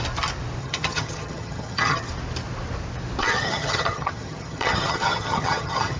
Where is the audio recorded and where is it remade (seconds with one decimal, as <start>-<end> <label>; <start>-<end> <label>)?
0.0-0.6 recorded; 0.6-2.1 remade; 2.1-3.2 recorded; 3.2-6.0 remade